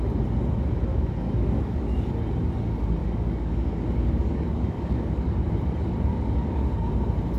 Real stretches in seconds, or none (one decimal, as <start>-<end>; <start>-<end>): 0.0-0.9; 2.1-3.0; 5.5-6.1; 6.9-7.4